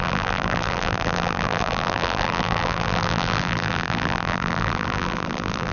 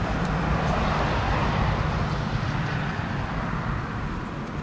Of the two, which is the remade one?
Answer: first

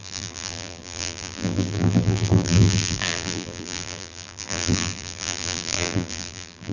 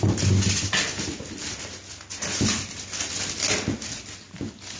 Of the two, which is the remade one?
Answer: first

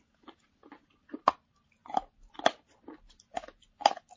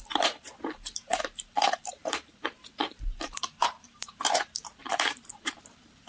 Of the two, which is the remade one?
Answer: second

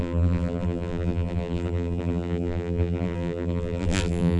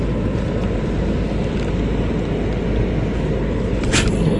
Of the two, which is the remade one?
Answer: first